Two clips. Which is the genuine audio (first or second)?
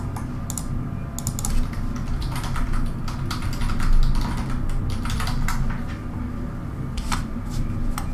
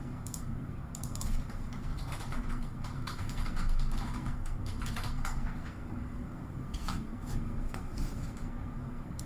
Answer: first